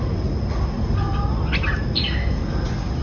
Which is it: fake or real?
real